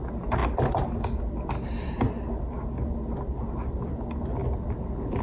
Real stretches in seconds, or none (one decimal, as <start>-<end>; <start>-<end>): 0.0-5.2